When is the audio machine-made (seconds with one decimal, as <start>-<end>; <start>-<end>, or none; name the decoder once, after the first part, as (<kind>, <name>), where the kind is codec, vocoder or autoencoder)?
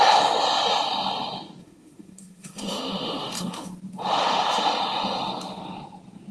1.6-3.7 (autoencoder, DAC-VAE)